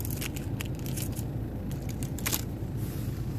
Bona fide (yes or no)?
yes